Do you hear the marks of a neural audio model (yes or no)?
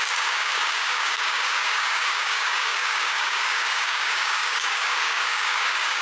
yes